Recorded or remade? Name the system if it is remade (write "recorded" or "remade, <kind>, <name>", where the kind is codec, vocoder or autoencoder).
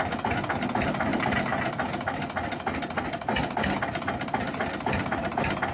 recorded